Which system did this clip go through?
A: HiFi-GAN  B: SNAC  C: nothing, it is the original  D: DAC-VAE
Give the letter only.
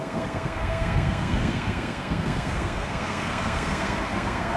B